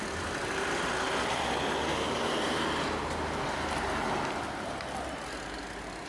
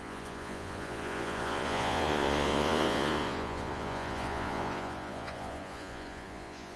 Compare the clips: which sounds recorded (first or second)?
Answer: first